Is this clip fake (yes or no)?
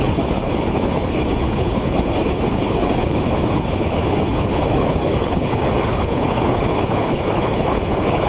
yes